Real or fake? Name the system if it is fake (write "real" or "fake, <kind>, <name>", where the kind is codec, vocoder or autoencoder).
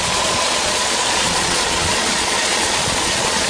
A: fake, vocoder, Vocos